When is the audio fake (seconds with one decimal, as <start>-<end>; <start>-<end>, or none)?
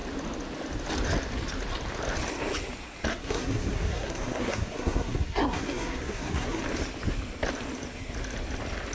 3.1-6.6